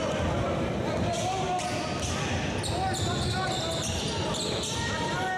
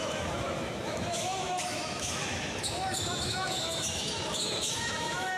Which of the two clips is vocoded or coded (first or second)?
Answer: second